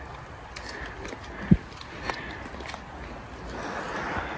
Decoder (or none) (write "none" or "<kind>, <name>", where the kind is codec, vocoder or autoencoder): none